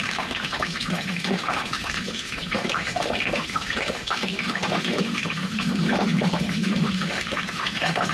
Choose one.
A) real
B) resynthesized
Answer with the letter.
B